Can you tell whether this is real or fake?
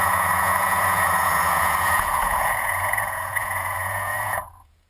fake